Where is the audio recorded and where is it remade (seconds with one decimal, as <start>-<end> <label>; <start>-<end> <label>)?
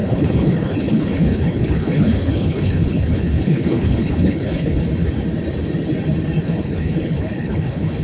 0.0-4.8 remade; 4.8-6.4 recorded; 6.4-8.0 remade